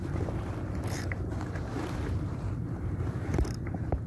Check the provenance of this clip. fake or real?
fake